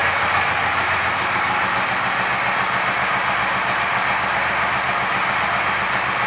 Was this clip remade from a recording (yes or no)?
no